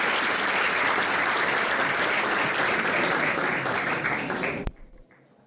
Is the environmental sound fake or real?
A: real